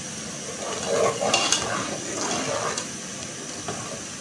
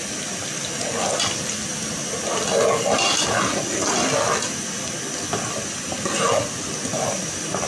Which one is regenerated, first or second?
first